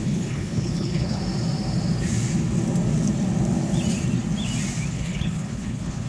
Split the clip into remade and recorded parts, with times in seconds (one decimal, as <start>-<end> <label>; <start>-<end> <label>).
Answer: 0.0-1.2 remade; 1.2-4.9 recorded; 4.9-6.1 remade